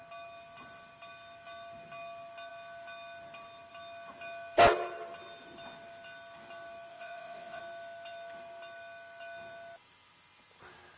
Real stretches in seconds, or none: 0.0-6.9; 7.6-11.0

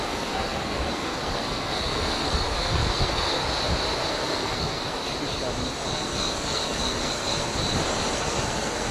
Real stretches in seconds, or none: 3.4-4.1; 5.0-5.9; 7.5-8.1

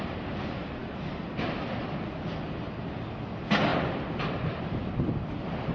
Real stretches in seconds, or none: 0.0-5.7